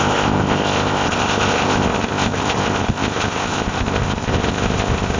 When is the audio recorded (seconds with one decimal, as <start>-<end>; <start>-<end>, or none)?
none